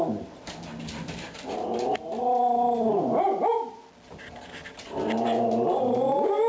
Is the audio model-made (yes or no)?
no